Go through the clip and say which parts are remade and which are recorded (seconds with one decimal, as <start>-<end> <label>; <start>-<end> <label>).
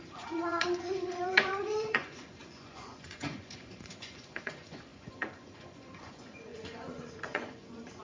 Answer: 0.0-8.0 remade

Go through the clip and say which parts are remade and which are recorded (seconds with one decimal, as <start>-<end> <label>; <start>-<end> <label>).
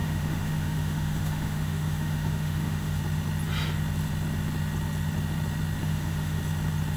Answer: 0.0-3.0 remade; 3.0-5.8 recorded; 5.8-6.4 remade; 6.4-7.0 recorded